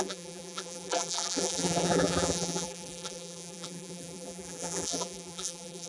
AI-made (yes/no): yes